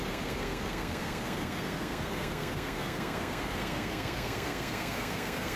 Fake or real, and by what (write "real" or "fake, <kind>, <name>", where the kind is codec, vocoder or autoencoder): fake, codec, SNAC